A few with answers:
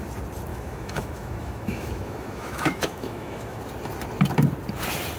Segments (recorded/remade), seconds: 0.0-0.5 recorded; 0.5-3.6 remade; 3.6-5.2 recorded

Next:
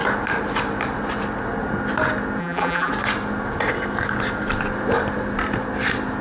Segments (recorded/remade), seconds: 0.0-2.4 recorded; 2.4-2.9 remade; 2.9-6.2 recorded

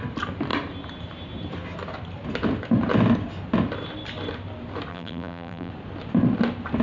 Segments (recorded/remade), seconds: 0.0-4.9 recorded; 4.9-5.7 remade; 5.7-6.8 recorded